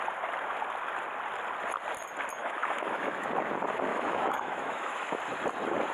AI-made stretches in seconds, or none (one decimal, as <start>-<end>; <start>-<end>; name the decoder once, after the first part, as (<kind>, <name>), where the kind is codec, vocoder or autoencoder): 2.4-3.3 (autoencoder, DAC-VAE); 3.9-5.2